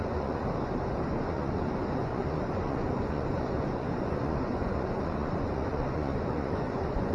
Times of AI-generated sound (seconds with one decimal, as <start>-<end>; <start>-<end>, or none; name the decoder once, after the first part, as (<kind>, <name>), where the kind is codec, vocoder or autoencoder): 0.0-0.4 (vocoder, Vocos); 1.1-7.1